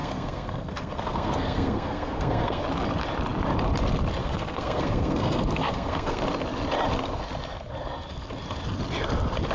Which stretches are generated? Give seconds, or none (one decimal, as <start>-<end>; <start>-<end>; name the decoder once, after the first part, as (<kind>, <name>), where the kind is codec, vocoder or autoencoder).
0.0-2.6 (codec, SNAC); 4.2-6.2